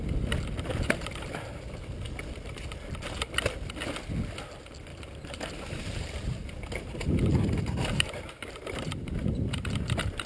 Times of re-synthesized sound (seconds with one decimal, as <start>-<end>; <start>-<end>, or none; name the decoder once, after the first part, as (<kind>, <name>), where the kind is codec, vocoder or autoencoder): 4.9-9.9 (vocoder, BigVGAN v2)